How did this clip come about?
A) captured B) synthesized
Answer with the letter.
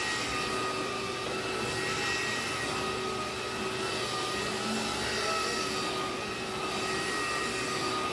A